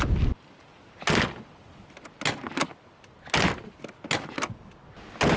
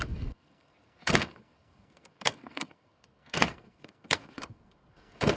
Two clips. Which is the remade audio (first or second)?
second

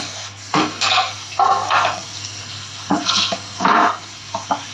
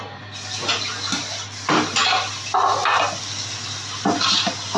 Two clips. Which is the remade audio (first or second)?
first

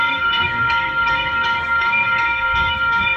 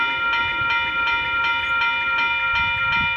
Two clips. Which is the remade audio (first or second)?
first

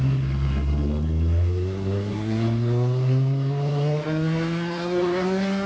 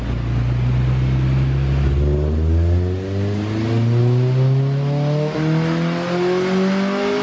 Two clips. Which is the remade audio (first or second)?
first